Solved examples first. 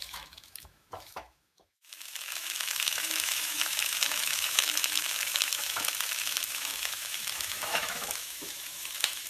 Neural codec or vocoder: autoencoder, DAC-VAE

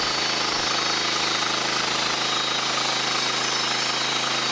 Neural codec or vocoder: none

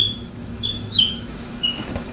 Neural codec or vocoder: autoencoder, DAC-VAE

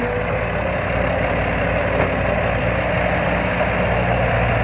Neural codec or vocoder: none